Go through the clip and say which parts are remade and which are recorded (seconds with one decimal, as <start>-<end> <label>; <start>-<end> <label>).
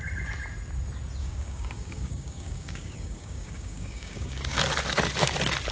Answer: 0.0-1.2 recorded; 1.2-4.6 remade; 4.6-5.7 recorded